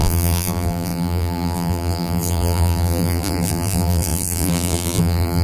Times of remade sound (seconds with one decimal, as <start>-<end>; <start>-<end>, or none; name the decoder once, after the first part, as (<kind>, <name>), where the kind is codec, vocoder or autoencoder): 0.0-5.4 (vocoder, BigVGAN v2)